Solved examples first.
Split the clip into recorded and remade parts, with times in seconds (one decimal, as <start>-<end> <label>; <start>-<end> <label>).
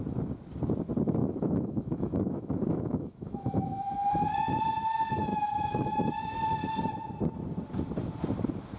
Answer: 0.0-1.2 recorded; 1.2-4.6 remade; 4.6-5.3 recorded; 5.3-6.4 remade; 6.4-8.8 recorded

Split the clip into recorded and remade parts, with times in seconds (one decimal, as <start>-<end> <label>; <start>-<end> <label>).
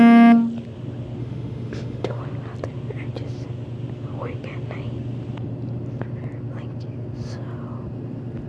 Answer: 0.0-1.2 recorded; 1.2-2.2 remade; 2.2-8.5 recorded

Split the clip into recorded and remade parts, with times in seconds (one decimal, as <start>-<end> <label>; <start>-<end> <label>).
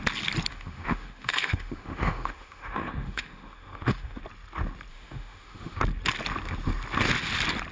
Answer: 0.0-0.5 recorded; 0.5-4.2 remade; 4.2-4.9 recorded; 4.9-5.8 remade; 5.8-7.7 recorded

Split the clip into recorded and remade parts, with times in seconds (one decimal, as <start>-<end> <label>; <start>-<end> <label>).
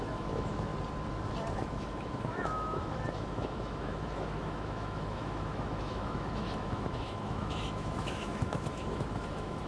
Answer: 0.0-0.7 remade; 0.7-1.5 recorded; 1.5-9.7 remade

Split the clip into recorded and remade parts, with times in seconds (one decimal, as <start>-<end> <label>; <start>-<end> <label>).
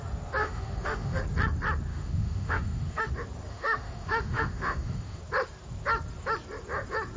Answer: 0.0-0.4 recorded; 0.4-1.2 remade; 1.2-1.9 recorded; 1.9-3.1 remade; 3.1-3.5 recorded; 3.5-5.2 remade; 5.2-7.2 recorded